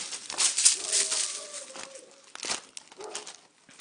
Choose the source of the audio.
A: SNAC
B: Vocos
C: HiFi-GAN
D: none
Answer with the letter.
D